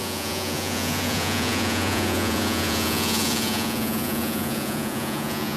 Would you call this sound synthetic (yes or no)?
yes